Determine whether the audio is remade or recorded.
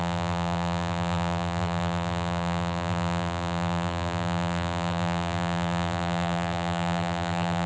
remade